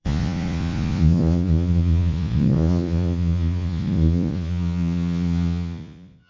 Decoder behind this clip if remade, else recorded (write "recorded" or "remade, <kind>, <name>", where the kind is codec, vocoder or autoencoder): remade, vocoder, Vocos